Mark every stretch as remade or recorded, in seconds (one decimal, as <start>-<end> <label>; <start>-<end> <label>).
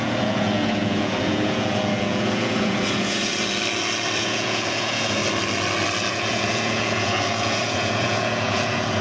0.0-3.3 remade; 3.3-4.2 recorded; 4.2-5.2 remade; 5.2-6.1 recorded; 6.1-9.0 remade